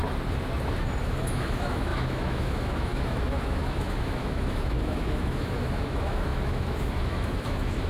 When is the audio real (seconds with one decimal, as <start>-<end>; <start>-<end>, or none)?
0.0-1.0